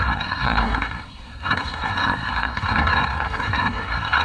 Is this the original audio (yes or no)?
no